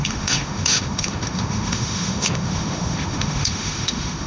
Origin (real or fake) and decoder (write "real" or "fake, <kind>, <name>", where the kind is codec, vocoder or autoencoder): fake, autoencoder, DAC-VAE